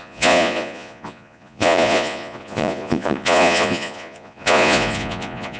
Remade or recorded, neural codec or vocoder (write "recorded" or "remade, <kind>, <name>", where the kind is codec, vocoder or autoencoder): remade, vocoder, Vocos